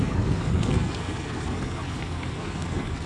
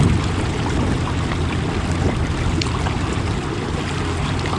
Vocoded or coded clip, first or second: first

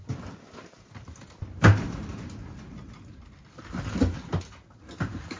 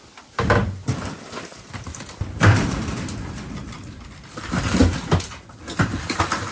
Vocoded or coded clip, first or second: second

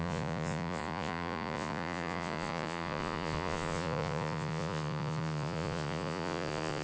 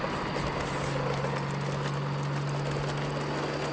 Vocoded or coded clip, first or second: first